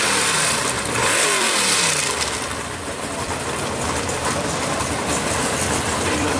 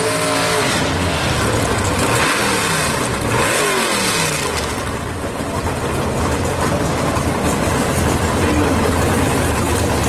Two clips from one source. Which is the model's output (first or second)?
first